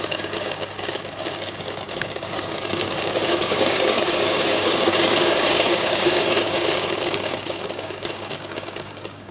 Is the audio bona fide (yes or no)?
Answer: no